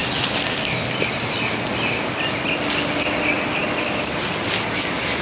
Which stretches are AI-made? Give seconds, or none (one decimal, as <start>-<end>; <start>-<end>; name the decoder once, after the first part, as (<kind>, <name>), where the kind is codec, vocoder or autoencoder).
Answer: none